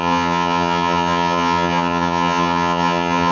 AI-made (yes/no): yes